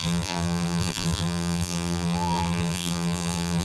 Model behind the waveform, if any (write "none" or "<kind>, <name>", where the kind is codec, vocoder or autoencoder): vocoder, BigVGAN v2